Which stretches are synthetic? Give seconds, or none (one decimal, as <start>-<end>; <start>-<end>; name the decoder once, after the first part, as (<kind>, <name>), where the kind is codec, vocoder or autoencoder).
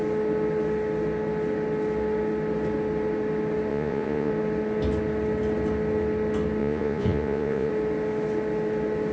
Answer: 3.7-4.3 (vocoder, Vocos); 6.6-7.7